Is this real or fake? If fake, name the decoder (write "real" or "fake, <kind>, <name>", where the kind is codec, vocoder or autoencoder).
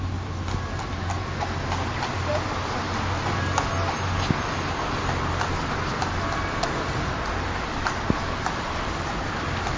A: real